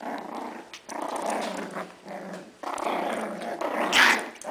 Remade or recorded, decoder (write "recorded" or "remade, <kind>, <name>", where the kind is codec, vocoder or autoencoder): recorded